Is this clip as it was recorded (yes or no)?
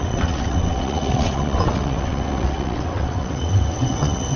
no